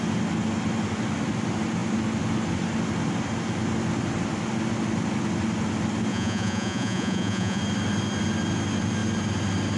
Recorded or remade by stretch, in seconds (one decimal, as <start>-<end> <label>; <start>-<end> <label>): 0.0-6.1 recorded; 6.1-7.6 remade; 7.6-9.8 recorded